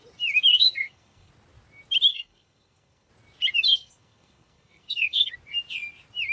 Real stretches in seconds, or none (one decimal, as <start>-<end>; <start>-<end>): 0.0-0.5; 1.3-2.1; 3.1-3.7; 5.3-6.3